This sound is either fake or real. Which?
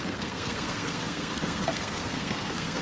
fake